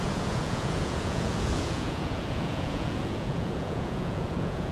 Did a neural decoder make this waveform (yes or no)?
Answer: yes